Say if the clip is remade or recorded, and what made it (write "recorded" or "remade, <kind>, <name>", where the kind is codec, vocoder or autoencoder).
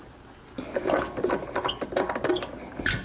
recorded